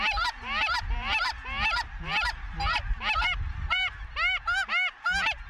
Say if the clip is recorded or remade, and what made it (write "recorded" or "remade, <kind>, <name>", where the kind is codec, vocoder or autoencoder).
recorded